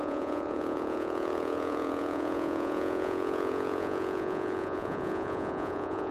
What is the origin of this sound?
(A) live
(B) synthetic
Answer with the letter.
B